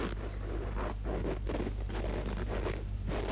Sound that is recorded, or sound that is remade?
recorded